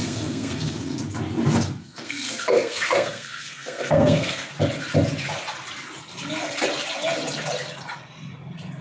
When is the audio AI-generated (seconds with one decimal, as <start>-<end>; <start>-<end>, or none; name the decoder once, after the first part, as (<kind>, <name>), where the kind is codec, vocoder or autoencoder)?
0.0-1.0 (codec, SNAC); 1.8-4.5